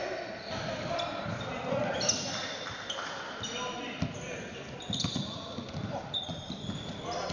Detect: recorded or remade recorded